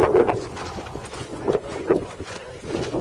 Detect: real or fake fake